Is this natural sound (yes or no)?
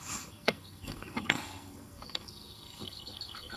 no